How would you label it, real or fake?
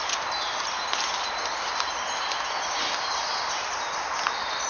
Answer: real